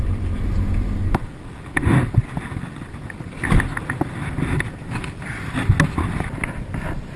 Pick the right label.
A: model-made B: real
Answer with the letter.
B